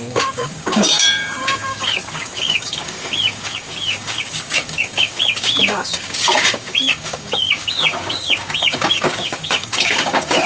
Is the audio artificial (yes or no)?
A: yes